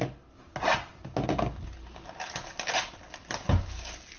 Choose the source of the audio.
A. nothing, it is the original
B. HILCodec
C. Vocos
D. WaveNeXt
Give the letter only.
A